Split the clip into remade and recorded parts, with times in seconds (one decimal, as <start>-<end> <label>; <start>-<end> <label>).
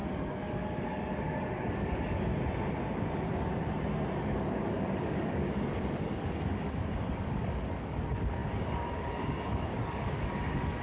0.0-2.3 remade; 2.3-4.2 recorded; 4.2-10.8 remade